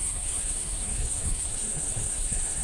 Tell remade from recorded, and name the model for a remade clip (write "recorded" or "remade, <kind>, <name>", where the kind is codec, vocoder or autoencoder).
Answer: remade, codec, SNAC